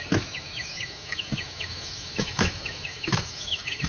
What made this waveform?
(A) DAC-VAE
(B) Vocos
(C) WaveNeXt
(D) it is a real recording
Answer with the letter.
A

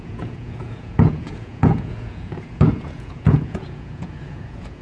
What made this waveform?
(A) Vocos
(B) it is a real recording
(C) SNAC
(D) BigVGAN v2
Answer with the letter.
A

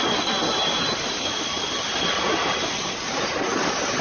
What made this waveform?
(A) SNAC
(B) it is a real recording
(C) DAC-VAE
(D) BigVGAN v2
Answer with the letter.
B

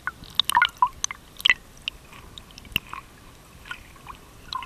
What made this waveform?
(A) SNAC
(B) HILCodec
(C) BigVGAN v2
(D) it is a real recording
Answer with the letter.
D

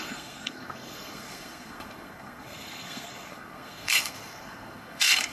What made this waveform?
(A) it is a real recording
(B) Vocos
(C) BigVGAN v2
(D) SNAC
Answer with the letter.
D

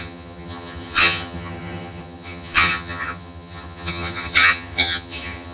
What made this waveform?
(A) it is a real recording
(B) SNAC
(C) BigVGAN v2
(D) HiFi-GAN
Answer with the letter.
D